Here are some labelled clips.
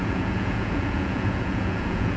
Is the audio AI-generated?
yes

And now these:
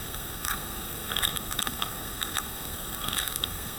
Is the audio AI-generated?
yes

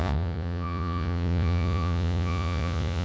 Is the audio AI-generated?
yes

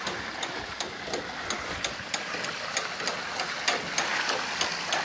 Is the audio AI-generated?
no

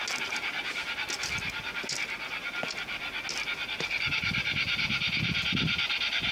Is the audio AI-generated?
no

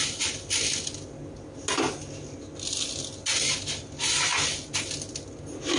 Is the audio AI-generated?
no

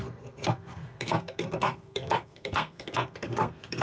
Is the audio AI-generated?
yes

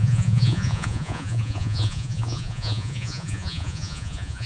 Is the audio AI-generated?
yes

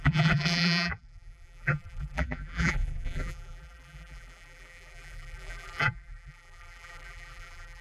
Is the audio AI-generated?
yes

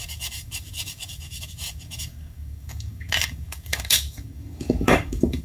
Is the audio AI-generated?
yes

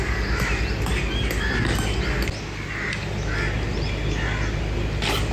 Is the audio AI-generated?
no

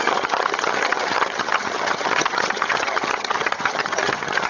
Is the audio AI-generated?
yes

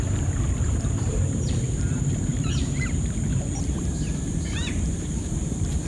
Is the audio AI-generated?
yes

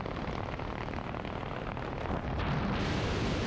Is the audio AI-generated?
no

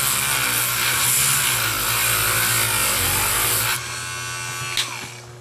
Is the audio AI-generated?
no